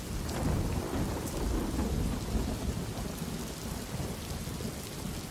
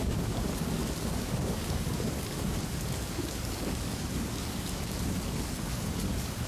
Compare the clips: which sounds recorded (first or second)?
first